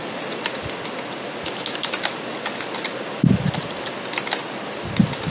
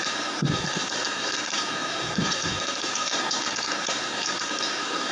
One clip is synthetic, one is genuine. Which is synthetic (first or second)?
second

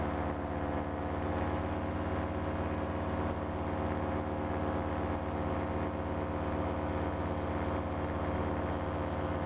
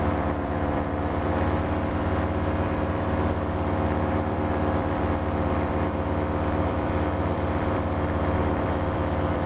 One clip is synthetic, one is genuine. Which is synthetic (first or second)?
second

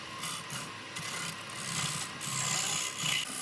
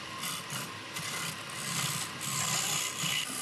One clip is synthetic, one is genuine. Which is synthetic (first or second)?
second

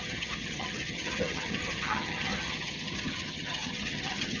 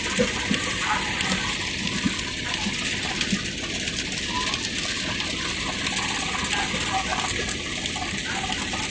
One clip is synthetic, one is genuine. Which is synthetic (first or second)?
first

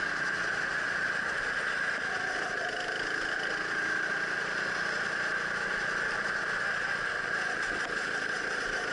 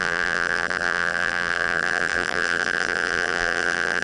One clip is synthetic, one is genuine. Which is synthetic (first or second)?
second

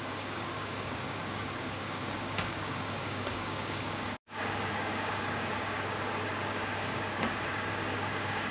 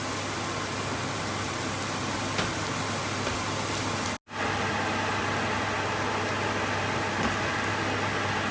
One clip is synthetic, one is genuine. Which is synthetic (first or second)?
first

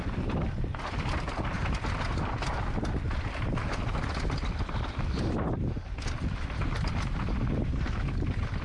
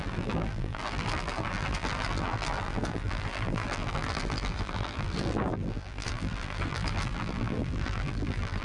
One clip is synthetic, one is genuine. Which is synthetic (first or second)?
second